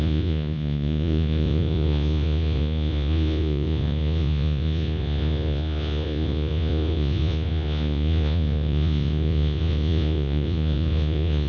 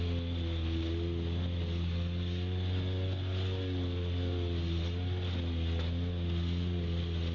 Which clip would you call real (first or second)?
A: second